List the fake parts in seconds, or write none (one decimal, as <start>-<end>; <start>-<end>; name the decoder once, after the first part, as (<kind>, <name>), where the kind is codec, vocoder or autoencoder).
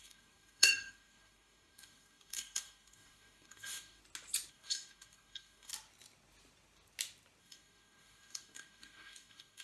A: 0.0-4.0 (codec, DAC); 4.5-5.7; 7.4-9.6